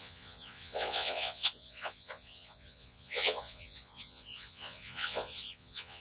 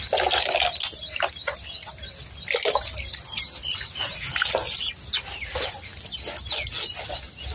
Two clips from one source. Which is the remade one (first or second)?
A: first